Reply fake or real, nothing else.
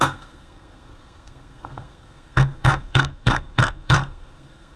fake